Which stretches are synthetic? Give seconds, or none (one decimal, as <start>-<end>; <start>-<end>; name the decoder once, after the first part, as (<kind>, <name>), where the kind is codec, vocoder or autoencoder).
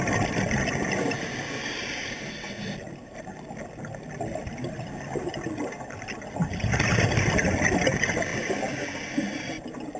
none